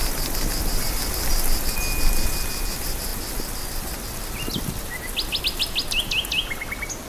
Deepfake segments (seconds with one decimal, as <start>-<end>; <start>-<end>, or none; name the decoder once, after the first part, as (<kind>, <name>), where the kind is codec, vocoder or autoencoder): none